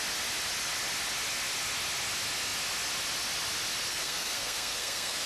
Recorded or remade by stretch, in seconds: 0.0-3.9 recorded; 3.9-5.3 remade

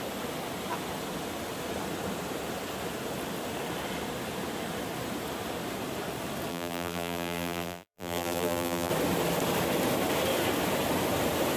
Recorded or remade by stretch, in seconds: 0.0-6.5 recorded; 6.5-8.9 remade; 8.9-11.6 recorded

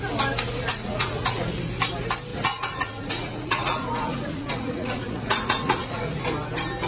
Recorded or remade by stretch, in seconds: 0.0-0.7 recorded; 0.7-1.6 remade; 1.6-2.3 recorded; 2.3-6.2 remade; 6.2-6.9 recorded

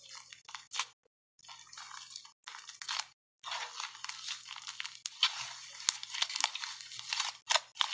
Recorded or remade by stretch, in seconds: 0.0-7.9 recorded

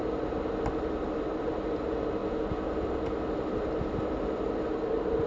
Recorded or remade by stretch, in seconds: 0.0-1.0 recorded; 1.0-2.2 remade; 2.2-5.3 recorded

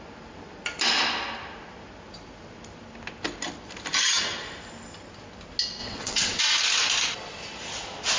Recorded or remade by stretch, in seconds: 0.0-5.8 recorded; 5.8-6.4 remade; 6.4-8.2 recorded